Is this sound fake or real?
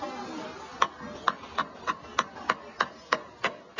real